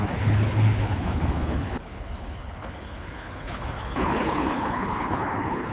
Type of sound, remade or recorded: remade